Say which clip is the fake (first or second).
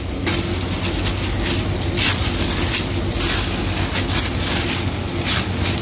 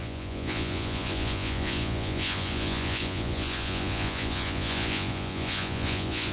second